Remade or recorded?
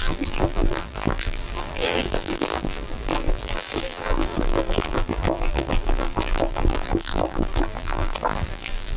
remade